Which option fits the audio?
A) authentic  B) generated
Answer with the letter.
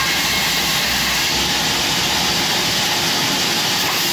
A